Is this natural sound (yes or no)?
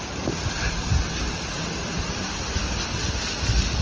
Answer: yes